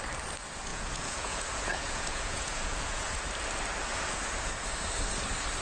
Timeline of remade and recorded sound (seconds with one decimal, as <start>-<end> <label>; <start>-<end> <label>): 0.0-0.7 recorded; 0.7-3.2 remade; 3.2-3.9 recorded; 3.9-4.5 remade; 4.5-5.6 recorded